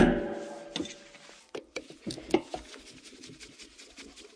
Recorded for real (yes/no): yes